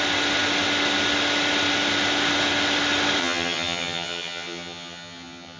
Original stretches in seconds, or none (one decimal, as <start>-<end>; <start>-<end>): 0.0-3.2